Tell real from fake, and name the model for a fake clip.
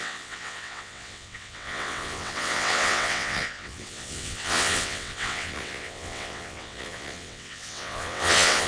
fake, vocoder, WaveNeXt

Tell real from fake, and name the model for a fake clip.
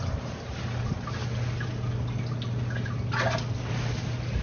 real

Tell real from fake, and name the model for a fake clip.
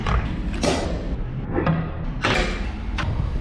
real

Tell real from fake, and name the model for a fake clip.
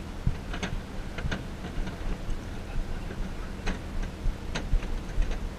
real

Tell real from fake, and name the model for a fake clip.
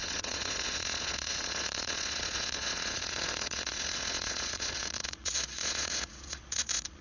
fake, vocoder, Vocos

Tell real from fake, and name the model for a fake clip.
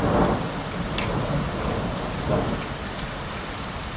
real